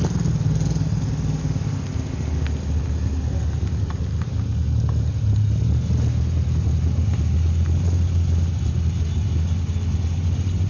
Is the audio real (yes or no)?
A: yes